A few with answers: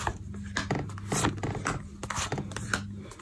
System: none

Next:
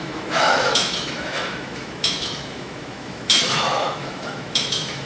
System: autoencoder, DAC-VAE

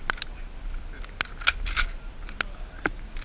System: none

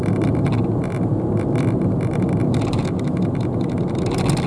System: none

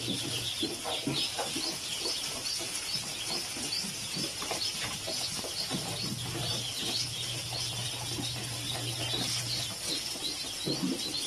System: none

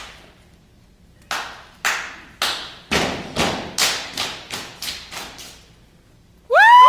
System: none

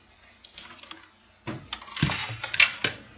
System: none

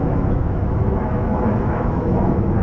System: autoencoder, DAC-VAE